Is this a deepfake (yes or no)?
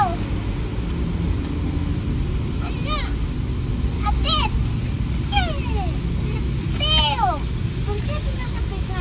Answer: no